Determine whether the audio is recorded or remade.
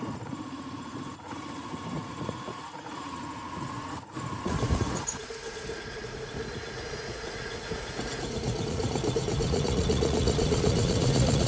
remade